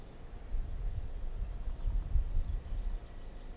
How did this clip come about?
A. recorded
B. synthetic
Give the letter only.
A